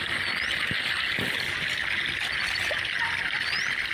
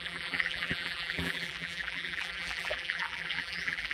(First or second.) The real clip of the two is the first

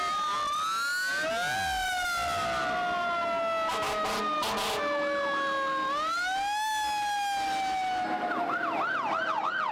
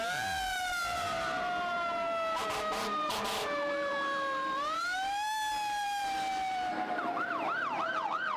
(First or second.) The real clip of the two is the first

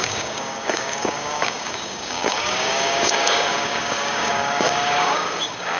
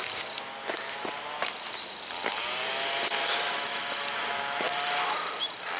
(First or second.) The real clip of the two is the second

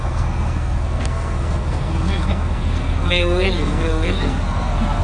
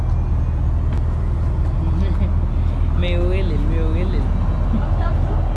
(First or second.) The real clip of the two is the second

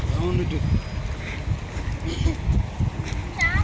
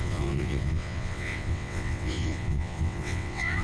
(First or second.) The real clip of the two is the first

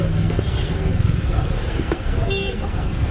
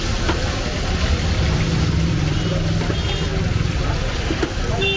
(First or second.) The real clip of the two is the second